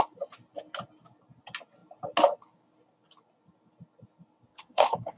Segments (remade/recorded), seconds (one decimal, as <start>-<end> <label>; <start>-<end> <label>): 0.0-4.5 recorded; 4.5-5.2 remade